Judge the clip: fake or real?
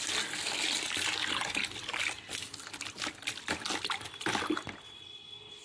real